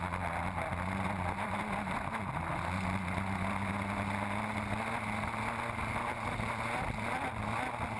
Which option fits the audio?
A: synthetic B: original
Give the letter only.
B